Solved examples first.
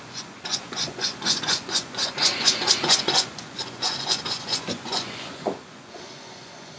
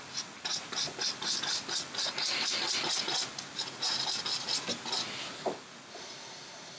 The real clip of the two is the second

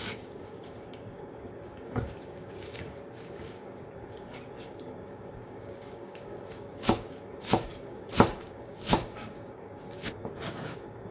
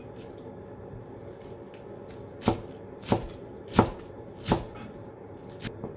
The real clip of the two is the second